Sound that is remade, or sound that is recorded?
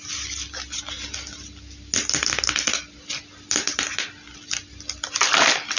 recorded